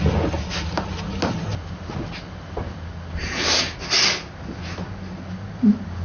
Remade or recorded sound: recorded